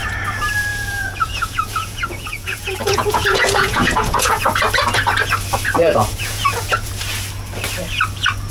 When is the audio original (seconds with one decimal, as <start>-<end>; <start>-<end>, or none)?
0.0-0.7; 4.4-5.8; 6.9-8.5

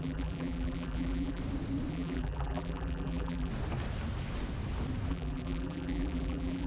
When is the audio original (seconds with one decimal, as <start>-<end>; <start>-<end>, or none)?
1.4-1.9; 3.5-5.1

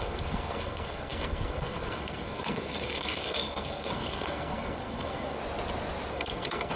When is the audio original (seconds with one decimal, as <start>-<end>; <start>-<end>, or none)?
5.4-6.1